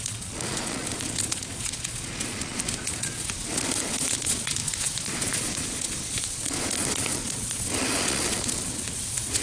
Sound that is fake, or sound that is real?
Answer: fake